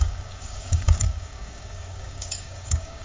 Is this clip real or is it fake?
fake